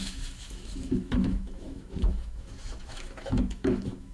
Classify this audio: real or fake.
fake